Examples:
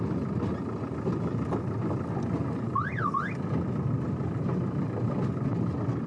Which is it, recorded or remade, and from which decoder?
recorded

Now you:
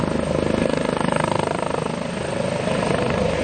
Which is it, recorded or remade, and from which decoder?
recorded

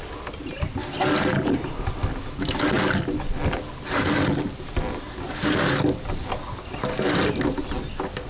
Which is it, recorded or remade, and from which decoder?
recorded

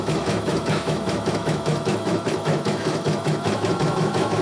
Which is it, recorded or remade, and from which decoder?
remade, autoencoder, DAC-VAE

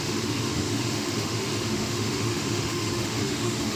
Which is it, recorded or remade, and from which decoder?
remade, autoencoder, DAC-VAE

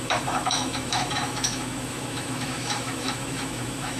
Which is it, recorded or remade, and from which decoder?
remade, autoencoder, DAC-VAE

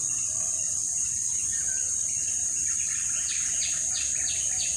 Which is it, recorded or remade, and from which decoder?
recorded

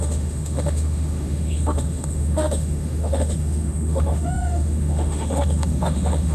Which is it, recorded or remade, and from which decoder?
remade, autoencoder, DAC-VAE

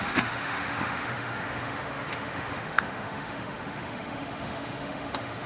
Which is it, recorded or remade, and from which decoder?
remade, autoencoder, DAC-VAE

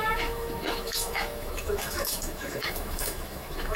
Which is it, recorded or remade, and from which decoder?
remade, autoencoder, DAC-VAE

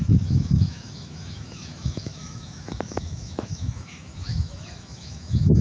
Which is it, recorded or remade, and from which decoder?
remade, autoencoder, DAC-VAE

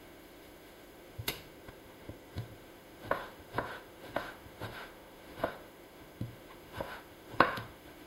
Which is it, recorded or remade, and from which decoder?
remade, autoencoder, DAC-VAE